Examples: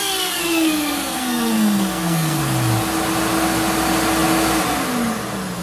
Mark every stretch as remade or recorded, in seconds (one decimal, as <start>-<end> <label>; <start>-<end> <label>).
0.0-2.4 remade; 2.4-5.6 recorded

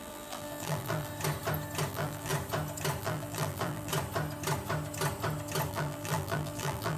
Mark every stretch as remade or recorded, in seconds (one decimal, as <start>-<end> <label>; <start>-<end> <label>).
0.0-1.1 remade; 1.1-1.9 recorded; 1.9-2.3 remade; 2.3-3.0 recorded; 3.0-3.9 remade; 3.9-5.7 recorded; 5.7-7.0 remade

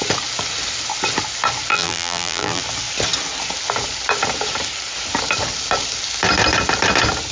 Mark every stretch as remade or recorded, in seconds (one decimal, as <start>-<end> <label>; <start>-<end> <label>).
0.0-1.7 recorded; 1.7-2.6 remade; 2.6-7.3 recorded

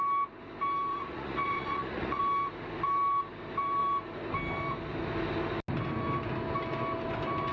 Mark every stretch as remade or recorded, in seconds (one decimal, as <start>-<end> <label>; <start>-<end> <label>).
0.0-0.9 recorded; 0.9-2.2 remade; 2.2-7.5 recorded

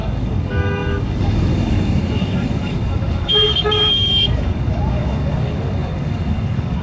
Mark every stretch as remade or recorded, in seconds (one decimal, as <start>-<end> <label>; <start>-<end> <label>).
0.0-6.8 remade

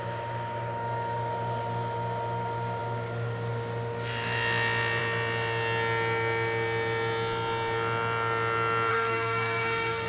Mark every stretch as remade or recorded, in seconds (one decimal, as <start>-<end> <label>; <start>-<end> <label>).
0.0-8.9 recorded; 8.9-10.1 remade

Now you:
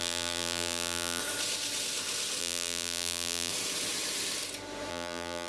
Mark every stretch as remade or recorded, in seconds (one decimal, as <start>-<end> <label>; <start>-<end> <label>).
0.0-1.2 remade; 1.2-2.4 recorded; 2.4-3.5 remade; 3.5-4.9 recorded; 4.9-5.5 remade

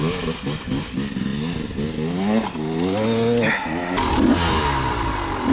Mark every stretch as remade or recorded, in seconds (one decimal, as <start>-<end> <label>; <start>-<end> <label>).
0.0-5.5 recorded